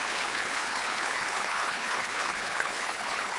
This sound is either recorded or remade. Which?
remade